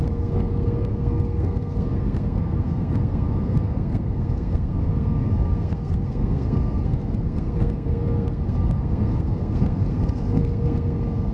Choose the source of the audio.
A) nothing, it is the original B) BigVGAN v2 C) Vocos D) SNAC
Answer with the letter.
D